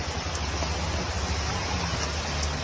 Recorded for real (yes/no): yes